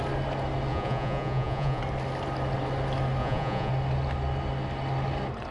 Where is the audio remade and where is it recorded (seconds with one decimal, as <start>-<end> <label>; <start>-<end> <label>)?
0.0-0.7 recorded; 0.7-1.8 remade; 1.8-3.2 recorded; 3.2-3.7 remade; 3.7-5.5 recorded